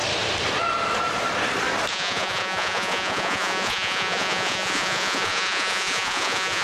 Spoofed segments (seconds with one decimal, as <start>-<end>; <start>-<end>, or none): 1.9-6.6

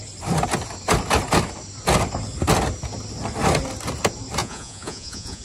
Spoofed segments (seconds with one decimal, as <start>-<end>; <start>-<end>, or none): 4.4-5.4

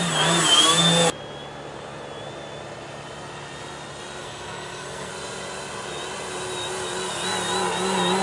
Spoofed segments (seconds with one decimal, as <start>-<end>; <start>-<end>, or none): 4.2-5.1

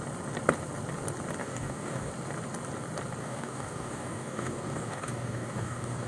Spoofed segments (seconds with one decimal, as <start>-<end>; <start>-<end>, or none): 1.4-2.1; 3.2-6.1

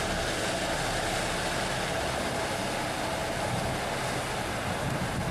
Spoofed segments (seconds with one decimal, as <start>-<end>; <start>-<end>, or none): none

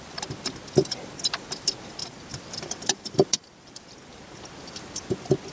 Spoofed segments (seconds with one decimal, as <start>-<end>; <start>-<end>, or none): 2.0-5.0